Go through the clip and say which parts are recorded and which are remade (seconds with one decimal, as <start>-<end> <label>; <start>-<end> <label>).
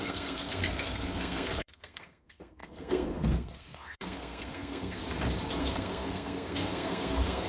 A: 0.0-5.0 remade; 5.0-5.6 recorded; 5.6-7.5 remade